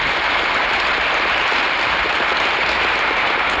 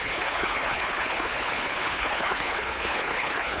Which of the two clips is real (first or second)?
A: first